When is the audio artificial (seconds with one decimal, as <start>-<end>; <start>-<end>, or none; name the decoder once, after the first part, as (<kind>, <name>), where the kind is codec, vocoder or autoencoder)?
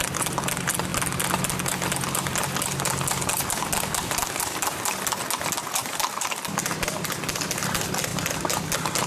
none